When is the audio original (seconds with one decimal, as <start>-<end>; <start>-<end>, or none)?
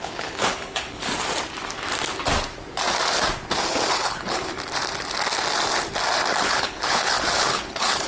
1.1-3.9; 4.5-6.4